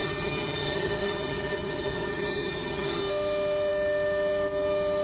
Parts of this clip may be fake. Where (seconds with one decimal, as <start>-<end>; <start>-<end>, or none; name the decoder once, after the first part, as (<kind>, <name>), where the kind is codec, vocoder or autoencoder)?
0.0-3.0 (vocoder, HiFi-GAN)